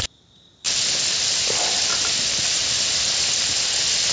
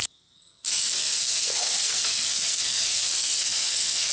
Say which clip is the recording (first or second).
first